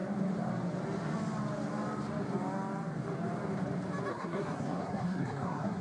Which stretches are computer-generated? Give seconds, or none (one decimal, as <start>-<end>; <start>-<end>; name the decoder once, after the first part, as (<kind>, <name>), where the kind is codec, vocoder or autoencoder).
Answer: 4.1-5.8 (codec, SNAC)